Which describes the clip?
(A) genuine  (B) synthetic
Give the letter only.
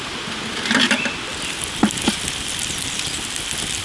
A